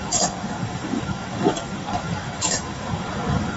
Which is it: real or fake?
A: fake